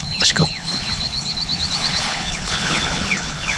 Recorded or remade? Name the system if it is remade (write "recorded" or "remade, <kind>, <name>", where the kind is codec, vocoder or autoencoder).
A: remade, codec, HILCodec